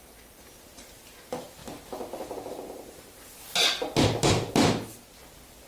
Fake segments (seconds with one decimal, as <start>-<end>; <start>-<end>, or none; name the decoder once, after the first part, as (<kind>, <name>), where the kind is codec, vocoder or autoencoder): none